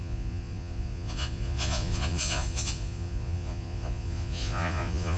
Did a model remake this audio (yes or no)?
yes